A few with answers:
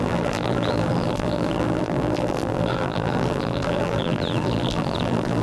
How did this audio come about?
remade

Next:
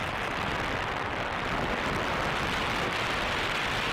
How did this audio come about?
recorded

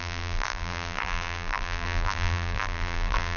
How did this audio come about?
remade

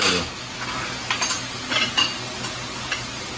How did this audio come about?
recorded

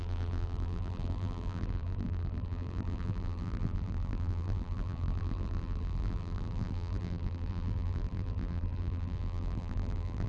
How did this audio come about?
remade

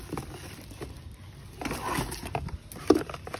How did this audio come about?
recorded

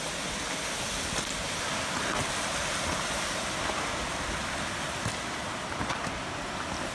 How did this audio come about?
recorded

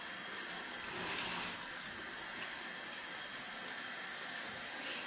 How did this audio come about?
recorded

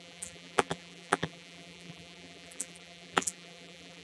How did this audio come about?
remade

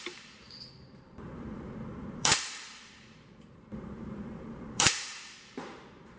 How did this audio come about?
remade